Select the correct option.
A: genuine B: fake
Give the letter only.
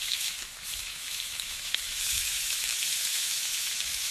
B